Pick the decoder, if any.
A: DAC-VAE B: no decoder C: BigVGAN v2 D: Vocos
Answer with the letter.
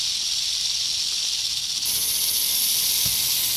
B